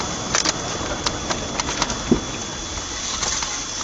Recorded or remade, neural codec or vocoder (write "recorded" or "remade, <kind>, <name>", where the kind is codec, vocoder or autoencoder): recorded